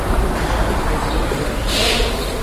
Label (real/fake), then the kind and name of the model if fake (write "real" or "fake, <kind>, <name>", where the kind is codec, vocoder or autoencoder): real